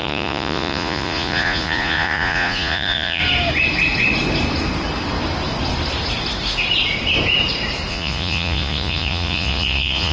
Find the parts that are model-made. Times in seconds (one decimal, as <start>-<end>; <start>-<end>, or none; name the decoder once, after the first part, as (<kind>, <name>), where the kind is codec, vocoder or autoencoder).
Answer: 0.0-3.2 (vocoder, Vocos); 7.9-10.1